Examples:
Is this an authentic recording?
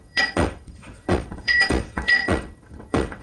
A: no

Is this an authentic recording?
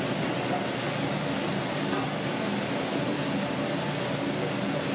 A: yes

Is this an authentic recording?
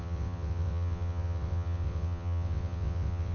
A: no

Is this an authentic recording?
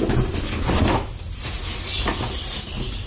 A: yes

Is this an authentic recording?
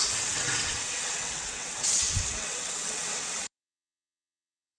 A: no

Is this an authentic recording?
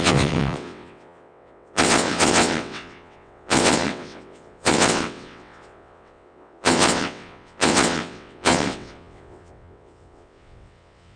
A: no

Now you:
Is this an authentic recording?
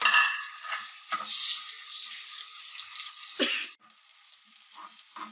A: yes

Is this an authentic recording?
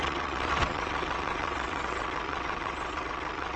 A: no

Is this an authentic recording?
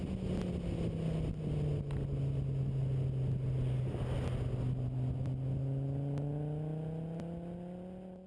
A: yes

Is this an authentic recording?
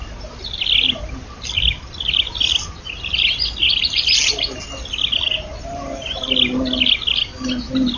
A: yes